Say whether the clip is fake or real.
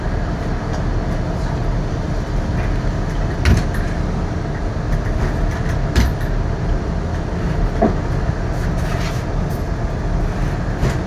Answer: real